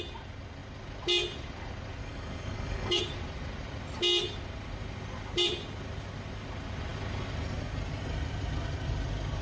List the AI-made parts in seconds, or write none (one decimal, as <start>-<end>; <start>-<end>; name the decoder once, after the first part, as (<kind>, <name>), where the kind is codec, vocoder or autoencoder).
2.0-3.0 (codec, DAC)